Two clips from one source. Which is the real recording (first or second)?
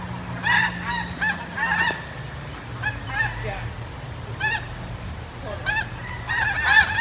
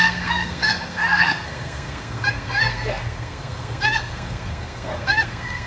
first